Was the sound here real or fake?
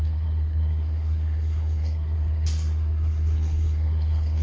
fake